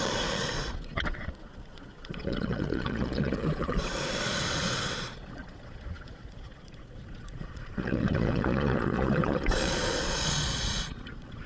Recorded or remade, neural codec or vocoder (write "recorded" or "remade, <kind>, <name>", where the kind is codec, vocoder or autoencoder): remade, vocoder, Vocos